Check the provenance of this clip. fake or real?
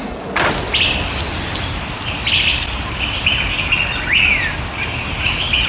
real